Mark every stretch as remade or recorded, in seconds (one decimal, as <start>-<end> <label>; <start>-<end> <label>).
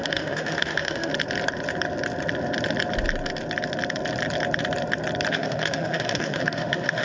0.0-1.1 remade; 1.1-5.3 recorded; 5.3-7.0 remade